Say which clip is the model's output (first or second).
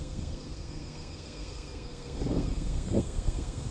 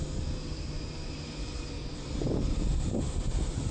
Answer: first